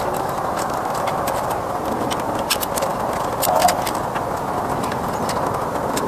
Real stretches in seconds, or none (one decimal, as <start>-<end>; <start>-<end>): 0.0-6.1